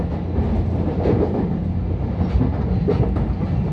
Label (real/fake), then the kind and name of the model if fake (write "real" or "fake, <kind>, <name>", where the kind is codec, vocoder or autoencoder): real